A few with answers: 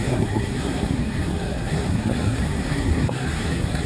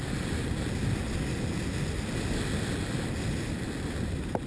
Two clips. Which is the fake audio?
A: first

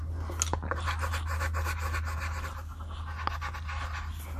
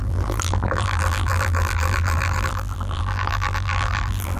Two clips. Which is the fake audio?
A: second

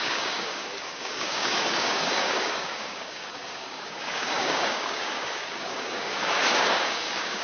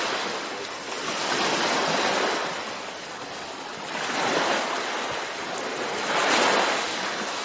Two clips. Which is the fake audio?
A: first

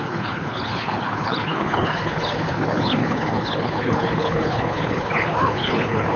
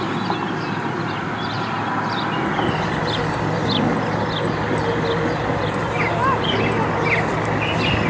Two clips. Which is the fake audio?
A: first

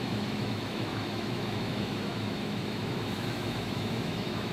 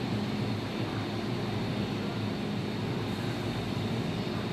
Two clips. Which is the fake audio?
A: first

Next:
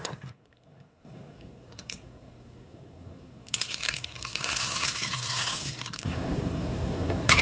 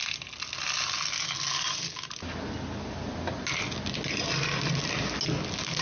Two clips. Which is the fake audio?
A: first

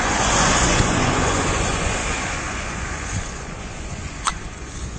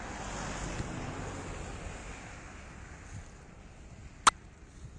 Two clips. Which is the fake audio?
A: first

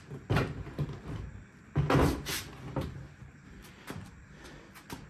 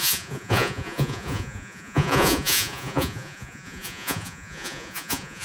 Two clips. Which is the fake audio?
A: second